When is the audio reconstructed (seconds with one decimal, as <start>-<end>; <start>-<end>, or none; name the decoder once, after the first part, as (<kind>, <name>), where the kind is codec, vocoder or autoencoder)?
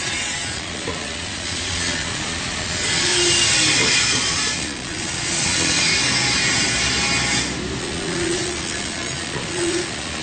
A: 0.0-3.1 (vocoder, Vocos); 3.8-5.9; 7.8-10.2